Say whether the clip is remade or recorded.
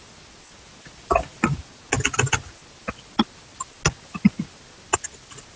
recorded